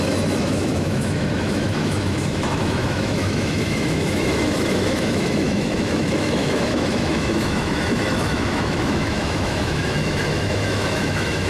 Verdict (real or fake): fake